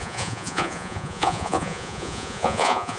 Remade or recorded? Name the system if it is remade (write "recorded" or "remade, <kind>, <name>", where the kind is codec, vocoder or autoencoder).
remade, vocoder, Vocos